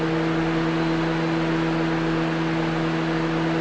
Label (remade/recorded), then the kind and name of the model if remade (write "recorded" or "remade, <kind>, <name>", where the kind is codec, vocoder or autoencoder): recorded